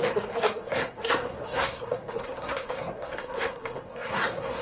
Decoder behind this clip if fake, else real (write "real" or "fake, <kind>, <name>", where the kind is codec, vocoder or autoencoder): fake, codec, SNAC